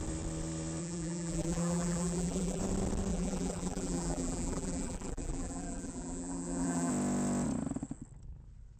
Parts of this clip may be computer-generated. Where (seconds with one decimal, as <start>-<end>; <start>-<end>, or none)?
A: 0.8-2.6; 3.1-6.9